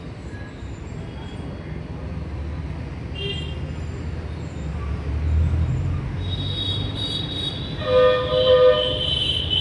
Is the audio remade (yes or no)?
no